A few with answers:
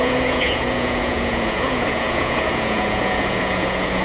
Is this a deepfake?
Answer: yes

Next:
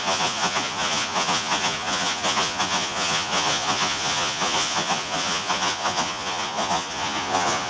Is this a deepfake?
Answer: yes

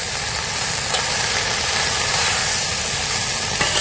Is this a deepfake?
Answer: no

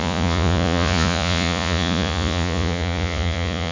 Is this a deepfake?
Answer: yes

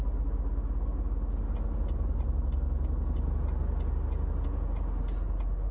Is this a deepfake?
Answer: no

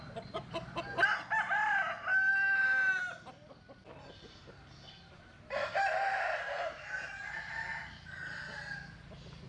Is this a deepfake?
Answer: no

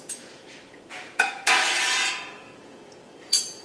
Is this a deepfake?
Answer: yes